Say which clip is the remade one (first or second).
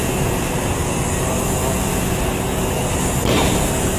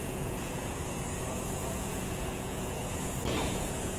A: second